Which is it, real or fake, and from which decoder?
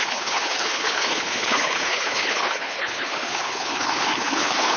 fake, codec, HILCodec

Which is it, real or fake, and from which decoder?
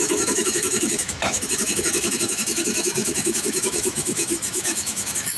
fake, autoencoder, DAC-VAE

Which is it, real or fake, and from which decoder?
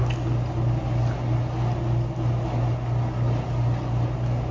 real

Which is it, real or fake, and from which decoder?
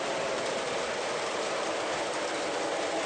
fake, vocoder, BigVGAN v2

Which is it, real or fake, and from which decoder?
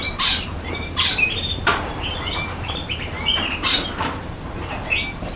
fake, vocoder, BigVGAN v2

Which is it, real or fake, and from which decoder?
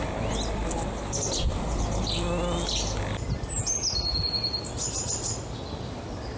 real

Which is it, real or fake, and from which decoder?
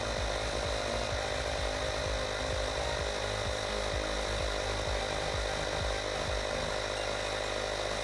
real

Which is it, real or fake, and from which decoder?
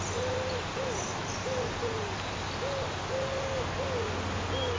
real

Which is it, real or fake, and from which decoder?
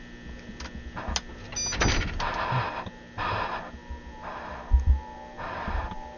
real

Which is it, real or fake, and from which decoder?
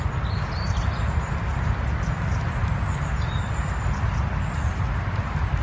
real